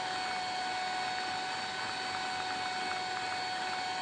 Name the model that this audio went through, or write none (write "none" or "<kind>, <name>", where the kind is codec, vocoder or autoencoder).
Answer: none